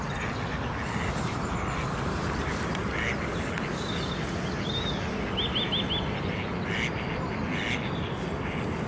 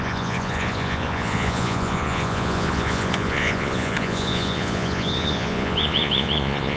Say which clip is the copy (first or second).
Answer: second